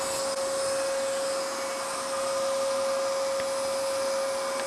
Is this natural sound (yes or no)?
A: yes